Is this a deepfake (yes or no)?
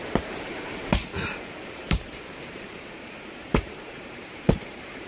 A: yes